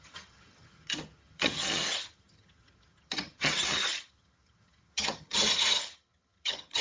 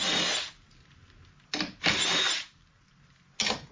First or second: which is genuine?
second